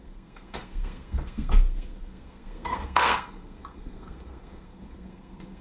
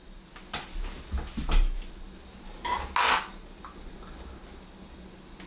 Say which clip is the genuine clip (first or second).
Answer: second